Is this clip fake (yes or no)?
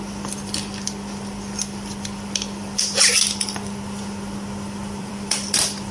yes